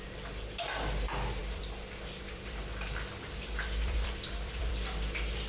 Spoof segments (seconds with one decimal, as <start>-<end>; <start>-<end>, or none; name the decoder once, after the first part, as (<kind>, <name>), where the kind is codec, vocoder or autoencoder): 1.4-4.7 (vocoder, BigVGAN v2)